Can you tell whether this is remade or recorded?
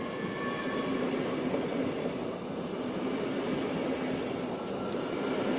recorded